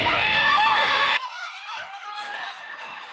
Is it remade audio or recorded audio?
remade